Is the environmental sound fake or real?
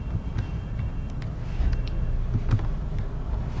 real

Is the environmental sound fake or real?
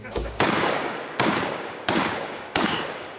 fake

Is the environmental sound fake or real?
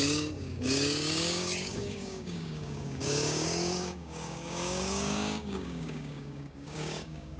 fake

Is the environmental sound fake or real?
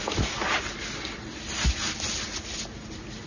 real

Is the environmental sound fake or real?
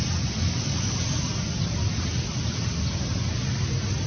real